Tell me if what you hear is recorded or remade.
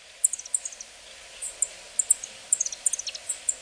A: recorded